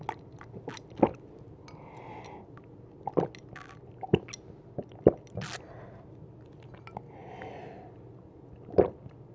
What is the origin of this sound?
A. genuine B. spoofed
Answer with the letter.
A